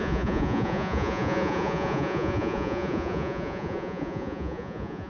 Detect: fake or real fake